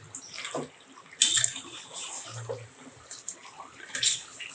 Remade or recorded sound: recorded